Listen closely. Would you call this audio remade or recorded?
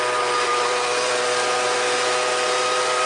remade